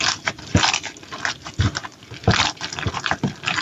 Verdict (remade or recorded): recorded